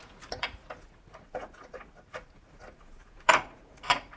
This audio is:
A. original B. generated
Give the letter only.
B